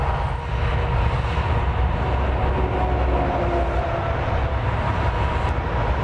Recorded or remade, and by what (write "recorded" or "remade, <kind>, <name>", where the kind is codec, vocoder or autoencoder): recorded